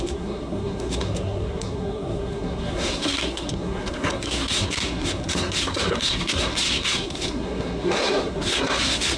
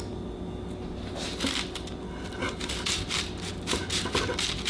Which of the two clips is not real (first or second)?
first